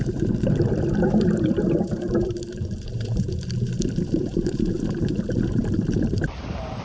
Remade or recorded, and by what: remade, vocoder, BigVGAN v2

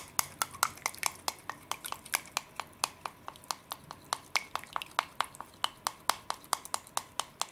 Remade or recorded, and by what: recorded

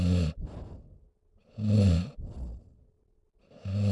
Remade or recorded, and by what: recorded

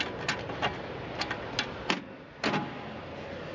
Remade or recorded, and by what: recorded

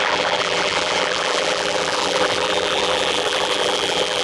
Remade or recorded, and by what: remade, vocoder, BigVGAN v2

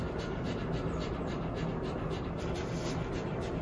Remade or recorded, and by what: recorded